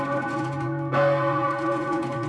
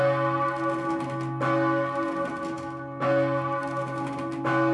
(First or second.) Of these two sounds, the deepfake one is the first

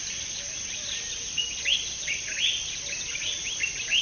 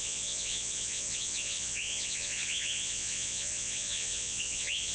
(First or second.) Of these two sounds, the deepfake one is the second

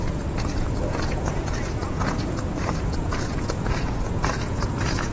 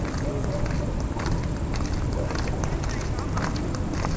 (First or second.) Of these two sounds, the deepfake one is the first